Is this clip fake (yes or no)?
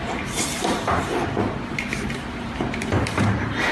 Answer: yes